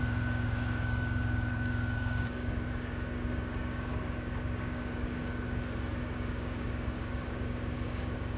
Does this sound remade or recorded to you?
remade